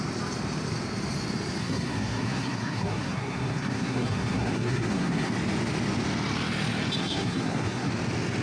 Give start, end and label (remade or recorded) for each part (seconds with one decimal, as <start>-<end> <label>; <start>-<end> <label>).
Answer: 0.0-1.6 recorded; 1.6-5.3 remade; 5.3-7.0 recorded; 7.0-7.9 remade; 7.9-8.4 recorded